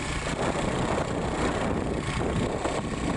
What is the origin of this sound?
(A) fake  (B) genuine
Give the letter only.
B